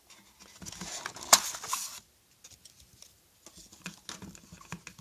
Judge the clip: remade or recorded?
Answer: recorded